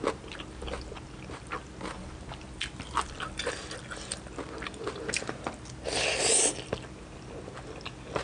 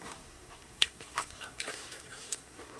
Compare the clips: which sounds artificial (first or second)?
second